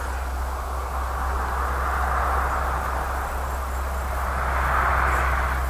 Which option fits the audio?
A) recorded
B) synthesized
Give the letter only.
A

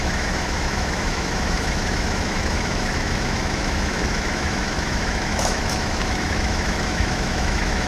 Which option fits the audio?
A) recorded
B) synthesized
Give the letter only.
B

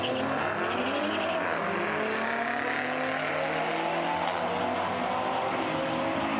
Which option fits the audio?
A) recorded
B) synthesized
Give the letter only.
A